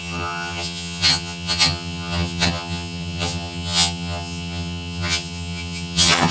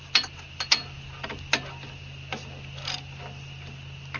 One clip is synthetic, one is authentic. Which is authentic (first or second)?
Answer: second